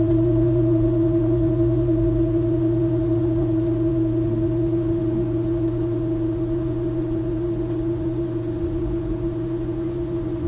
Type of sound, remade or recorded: remade